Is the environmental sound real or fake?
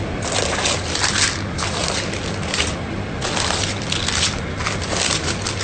real